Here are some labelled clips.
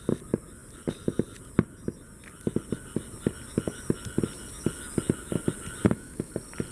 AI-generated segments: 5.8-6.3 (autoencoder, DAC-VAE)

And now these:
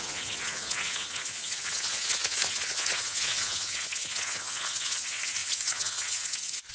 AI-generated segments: 0.0-6.7 (vocoder, Vocos)